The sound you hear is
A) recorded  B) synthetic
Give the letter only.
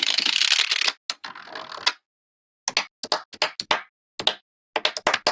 A